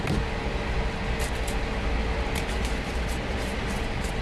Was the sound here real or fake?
real